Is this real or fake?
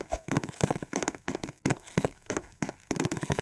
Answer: fake